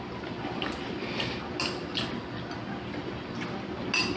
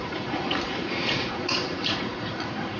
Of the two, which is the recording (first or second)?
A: first